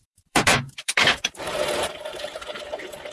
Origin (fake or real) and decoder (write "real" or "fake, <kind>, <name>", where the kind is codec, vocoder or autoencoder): fake, vocoder, BigVGAN v2